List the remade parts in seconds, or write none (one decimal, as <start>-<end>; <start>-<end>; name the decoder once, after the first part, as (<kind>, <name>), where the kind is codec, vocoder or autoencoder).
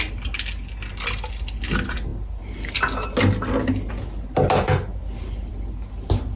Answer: none